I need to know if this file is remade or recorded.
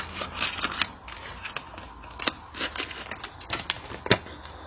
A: recorded